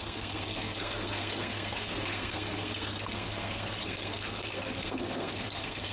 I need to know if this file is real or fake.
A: fake